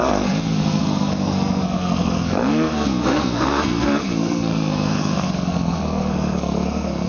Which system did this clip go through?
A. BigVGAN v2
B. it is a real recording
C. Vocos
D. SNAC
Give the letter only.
D